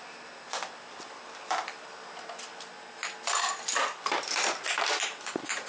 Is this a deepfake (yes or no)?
no